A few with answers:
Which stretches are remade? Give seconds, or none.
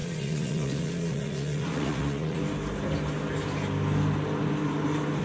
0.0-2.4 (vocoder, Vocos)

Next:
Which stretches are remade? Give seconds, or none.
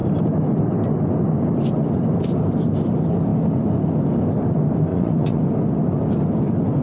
4.9-5.4 (vocoder, Vocos)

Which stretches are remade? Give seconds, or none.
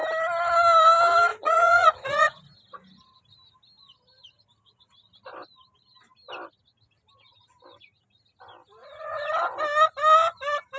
1.3-2.4 (vocoder, Vocos); 8.8-9.3